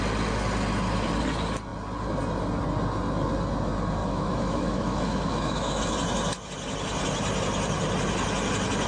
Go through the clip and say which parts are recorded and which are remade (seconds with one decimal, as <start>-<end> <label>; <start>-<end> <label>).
0.0-4.0 recorded; 4.0-5.8 remade; 5.8-8.9 recorded